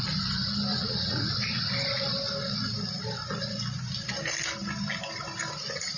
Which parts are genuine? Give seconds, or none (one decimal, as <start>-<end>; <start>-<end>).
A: 0.0-0.7; 1.7-6.0

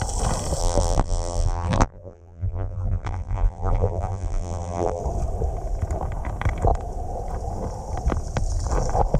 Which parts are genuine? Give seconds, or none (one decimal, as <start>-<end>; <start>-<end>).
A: 0.0-0.6; 5.0-9.2

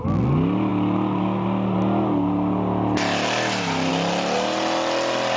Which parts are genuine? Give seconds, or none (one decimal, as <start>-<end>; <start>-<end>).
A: 0.0-5.4

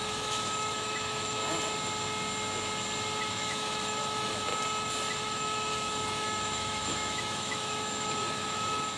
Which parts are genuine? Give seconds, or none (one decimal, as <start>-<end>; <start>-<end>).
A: 1.4-3.3; 4.5-5.2

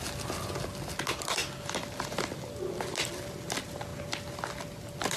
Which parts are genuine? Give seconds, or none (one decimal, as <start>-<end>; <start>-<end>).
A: 0.0-5.2

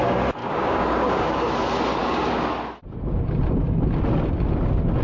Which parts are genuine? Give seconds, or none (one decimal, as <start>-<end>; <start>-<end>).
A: 0.0-0.4; 1.5-2.0; 2.5-5.0